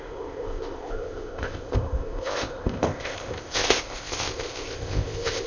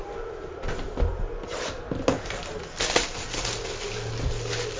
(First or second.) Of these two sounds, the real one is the second